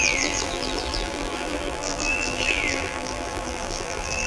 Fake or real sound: fake